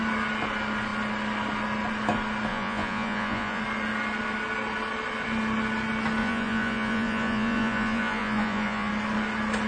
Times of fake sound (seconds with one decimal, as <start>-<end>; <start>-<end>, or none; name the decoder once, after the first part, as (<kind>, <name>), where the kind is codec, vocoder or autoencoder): 2.5-3.6 (vocoder, Vocos); 6.2-8.9